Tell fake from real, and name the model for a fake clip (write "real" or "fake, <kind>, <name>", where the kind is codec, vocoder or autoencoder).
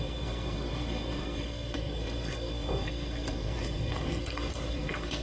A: fake, codec, SNAC